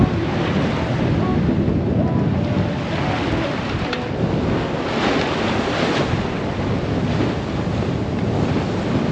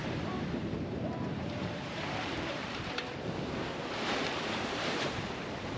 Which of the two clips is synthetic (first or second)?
second